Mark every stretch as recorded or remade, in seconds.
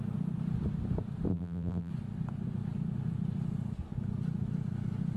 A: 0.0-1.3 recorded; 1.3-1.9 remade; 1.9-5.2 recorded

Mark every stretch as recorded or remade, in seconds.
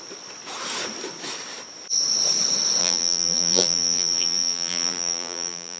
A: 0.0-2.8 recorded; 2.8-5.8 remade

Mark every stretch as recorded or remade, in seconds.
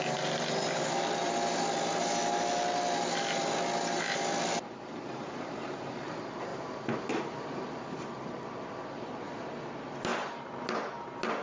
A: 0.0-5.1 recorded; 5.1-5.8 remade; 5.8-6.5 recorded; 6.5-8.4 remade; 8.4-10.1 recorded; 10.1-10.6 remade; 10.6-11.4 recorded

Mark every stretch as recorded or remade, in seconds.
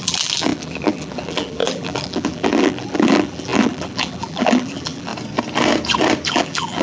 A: 0.0-5.1 remade; 5.1-6.3 recorded; 6.3-6.8 remade